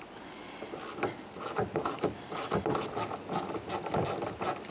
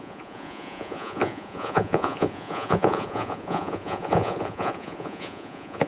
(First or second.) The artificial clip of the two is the second